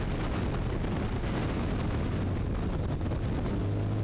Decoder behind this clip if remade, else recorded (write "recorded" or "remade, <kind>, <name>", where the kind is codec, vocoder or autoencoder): recorded